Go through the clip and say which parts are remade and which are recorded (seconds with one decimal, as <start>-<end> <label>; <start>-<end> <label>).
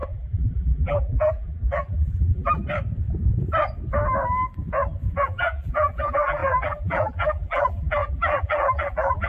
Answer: 0.0-2.6 remade; 2.6-5.1 recorded; 5.1-9.3 remade